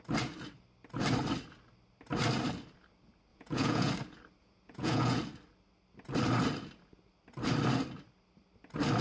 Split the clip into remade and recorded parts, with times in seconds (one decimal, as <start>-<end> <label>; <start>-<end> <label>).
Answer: 0.0-3.3 recorded; 3.3-3.9 remade; 3.9-4.4 recorded; 4.4-5.2 remade; 5.2-9.0 recorded